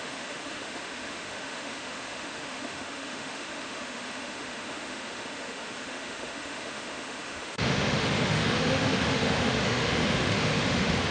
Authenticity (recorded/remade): remade